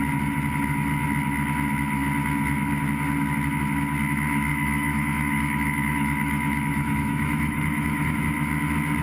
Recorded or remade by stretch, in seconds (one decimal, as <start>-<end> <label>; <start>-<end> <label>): 0.0-4.5 recorded; 4.5-8.2 remade; 8.2-9.0 recorded

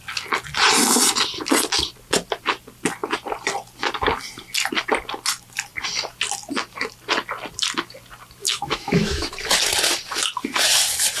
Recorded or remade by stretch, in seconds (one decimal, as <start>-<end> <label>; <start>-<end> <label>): 0.0-8.4 recorded; 8.4-9.3 remade; 9.3-11.2 recorded

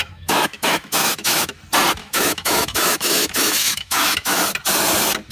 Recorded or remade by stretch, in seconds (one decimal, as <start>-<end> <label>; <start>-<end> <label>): 0.0-1.5 remade; 1.5-2.0 recorded; 2.0-4.4 remade; 4.4-5.3 recorded

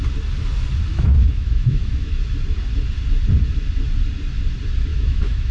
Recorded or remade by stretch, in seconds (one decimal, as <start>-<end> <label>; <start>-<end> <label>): 0.0-0.9 recorded; 0.9-2.2 remade; 2.2-4.9 recorded; 4.9-5.5 remade

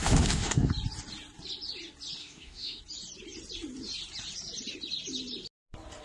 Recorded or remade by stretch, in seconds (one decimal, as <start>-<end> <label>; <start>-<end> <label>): 0.0-0.7 remade; 0.7-2.2 recorded; 2.2-2.8 remade; 2.8-6.0 recorded

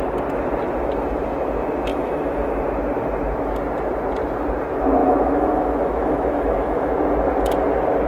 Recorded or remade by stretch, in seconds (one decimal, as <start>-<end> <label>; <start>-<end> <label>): 0.0-1.9 recorded; 1.9-2.6 remade; 2.6-5.0 recorded; 5.0-6.9 remade; 6.9-8.1 recorded